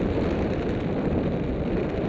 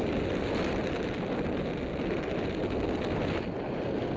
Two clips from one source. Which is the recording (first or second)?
second